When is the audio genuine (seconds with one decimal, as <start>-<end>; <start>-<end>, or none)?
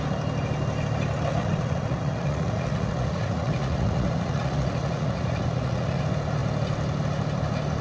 0.0-1.3; 6.0-7.8